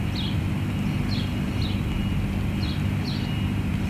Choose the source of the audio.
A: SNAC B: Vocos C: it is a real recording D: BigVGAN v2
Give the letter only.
C